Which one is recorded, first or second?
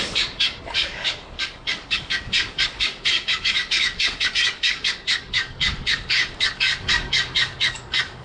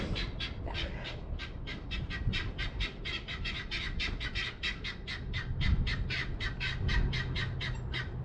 second